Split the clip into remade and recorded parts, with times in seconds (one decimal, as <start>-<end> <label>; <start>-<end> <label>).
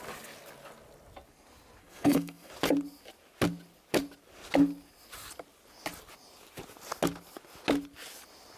0.0-1.8 recorded; 1.8-2.5 remade; 2.5-8.6 recorded